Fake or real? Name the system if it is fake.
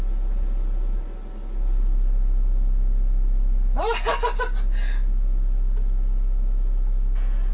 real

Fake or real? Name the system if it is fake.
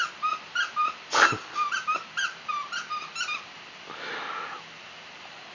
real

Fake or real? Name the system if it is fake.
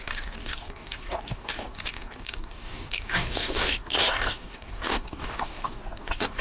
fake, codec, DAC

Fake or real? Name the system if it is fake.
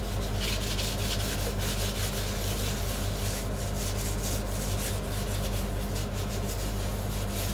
real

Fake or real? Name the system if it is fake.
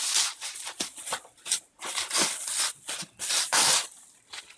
real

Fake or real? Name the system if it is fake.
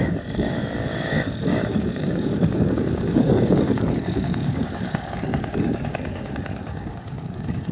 fake, codec, DAC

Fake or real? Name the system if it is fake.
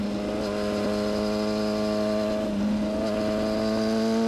real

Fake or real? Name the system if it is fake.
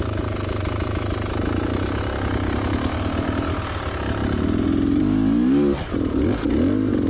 real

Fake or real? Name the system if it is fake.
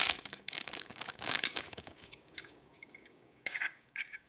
fake, codec, DAC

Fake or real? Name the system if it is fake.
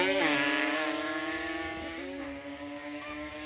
fake, codec, DAC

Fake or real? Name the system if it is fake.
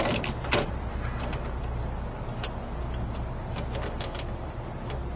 real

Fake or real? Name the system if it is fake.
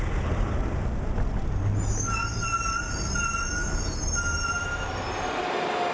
real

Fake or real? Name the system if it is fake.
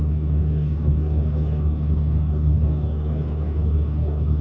fake, codec, DAC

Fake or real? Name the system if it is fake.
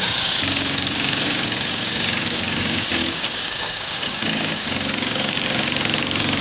fake, codec, DAC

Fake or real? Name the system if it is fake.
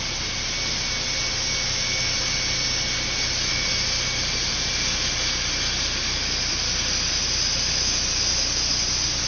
real